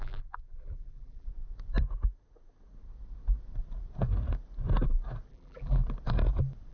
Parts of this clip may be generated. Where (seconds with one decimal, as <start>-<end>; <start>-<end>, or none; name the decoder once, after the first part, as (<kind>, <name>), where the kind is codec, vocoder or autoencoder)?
0.0-1.3 (vocoder, BigVGAN v2); 5.3-5.8